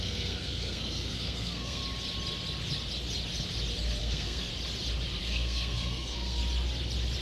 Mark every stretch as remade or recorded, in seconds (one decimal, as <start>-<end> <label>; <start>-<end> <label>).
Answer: 0.0-1.8 remade; 1.8-4.0 recorded; 4.0-4.5 remade; 4.5-5.2 recorded; 5.2-6.4 remade; 6.4-7.2 recorded